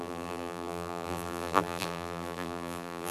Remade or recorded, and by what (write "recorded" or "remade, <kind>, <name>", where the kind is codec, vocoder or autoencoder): remade, vocoder, BigVGAN v2